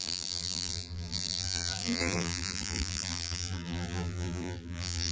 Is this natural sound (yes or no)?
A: no